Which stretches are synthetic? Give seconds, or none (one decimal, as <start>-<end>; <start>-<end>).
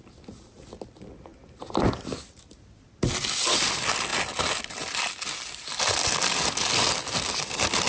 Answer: none